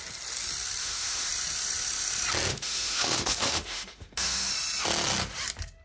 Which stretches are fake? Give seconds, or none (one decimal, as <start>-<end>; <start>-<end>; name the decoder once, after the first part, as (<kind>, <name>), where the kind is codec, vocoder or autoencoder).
0.8-1.3 (autoencoder, DAC-VAE); 2.5-4.5